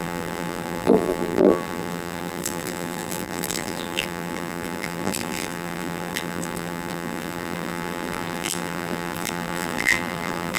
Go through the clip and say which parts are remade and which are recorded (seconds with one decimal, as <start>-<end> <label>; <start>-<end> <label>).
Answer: 0.0-10.6 remade